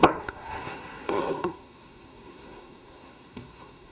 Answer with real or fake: fake